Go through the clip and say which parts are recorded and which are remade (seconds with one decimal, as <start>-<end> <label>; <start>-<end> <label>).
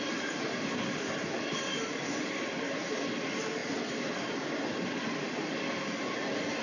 0.0-6.6 recorded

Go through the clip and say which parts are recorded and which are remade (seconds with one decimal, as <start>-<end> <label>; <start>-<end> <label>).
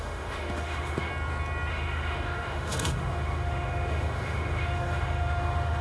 0.0-1.1 remade; 1.1-1.7 recorded; 1.7-5.8 remade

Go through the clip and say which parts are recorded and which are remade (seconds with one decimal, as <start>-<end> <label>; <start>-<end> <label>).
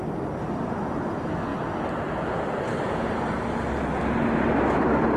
0.0-5.2 recorded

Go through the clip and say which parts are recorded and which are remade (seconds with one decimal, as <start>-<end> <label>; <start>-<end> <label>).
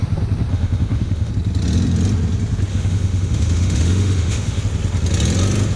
0.0-0.5 recorded; 0.5-1.3 remade; 1.3-2.7 recorded; 2.7-4.6 remade; 4.6-5.8 recorded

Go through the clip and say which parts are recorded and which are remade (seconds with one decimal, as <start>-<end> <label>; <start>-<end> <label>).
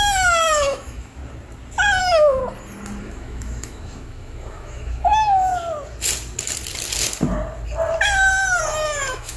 0.0-1.2 remade; 1.2-2.0 recorded; 2.0-2.4 remade; 2.4-3.0 recorded; 3.0-5.5 remade; 5.5-8.7 recorded; 8.7-9.4 remade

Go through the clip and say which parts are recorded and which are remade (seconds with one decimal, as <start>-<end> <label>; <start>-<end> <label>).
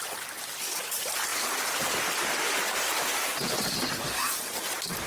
0.0-5.1 recorded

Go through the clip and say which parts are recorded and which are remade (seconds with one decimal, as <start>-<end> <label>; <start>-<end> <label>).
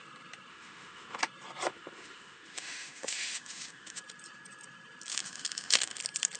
0.0-0.5 recorded; 0.5-1.2 remade; 1.2-1.7 recorded; 1.7-4.0 remade; 4.0-5.1 recorded; 5.1-6.0 remade; 6.0-6.4 recorded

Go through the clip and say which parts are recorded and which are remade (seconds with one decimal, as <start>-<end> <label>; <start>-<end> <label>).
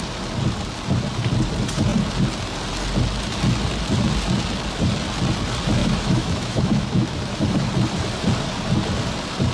0.0-5.8 recorded; 5.8-7.7 remade; 7.7-9.5 recorded